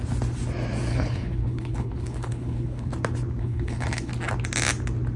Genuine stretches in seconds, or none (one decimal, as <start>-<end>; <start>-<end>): 0.0-0.9; 2.9-3.4; 4.1-5.2